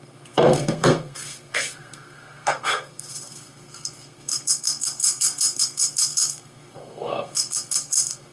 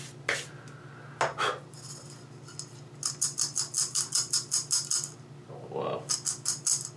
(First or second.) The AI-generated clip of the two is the first